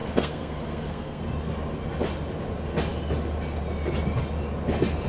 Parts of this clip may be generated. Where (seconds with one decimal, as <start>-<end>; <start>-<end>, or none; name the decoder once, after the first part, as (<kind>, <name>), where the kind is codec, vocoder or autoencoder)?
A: 0.0-1.2 (codec, SNAC)